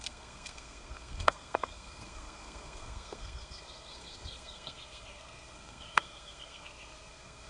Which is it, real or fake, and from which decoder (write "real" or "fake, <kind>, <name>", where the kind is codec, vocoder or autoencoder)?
fake, codec, SNAC